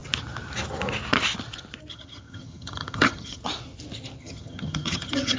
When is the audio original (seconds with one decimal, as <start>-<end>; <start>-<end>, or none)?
0.0-1.9; 3.4-4.2